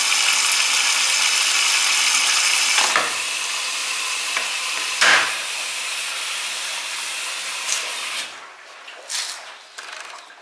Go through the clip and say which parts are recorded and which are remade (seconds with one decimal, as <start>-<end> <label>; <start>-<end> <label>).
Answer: 0.0-3.8 recorded; 3.8-6.8 remade; 6.8-10.4 recorded